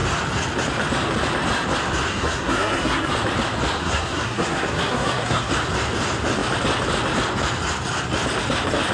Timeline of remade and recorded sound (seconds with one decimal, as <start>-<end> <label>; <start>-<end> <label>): 0.0-2.1 recorded; 2.1-3.1 remade; 3.1-3.8 recorded; 3.8-5.5 remade; 5.5-8.9 recorded